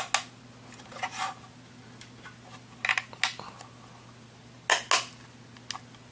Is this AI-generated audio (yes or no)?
no